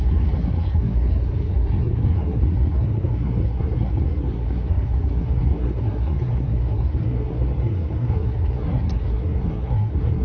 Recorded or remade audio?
remade